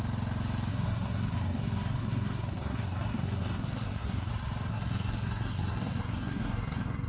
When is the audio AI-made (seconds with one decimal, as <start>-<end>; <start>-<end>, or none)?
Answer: 0.7-4.3; 4.7-7.1